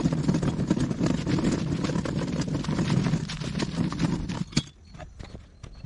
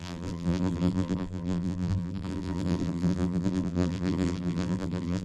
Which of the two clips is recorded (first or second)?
first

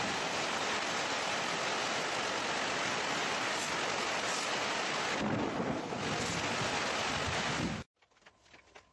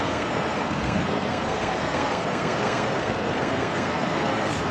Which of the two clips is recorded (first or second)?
first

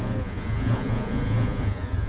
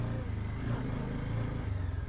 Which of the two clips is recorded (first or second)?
second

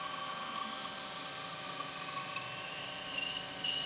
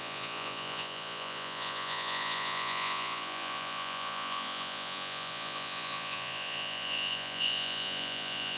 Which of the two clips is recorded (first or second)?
first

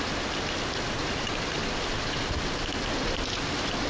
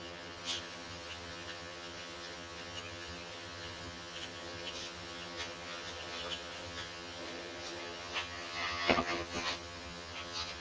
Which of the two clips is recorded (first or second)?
first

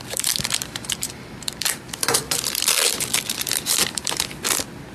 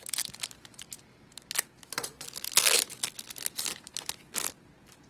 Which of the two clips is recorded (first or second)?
second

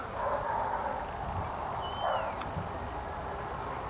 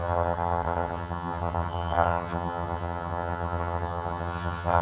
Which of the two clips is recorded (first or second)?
first